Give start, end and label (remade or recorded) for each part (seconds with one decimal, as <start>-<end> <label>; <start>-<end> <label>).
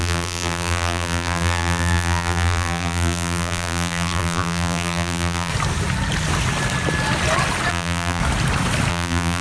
0.0-5.5 remade; 5.5-7.7 recorded; 7.7-8.2 remade; 8.2-8.9 recorded; 8.9-9.4 remade